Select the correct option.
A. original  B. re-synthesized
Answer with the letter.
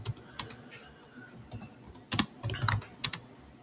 A